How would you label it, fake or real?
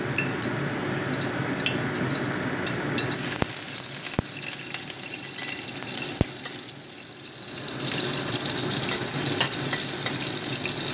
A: real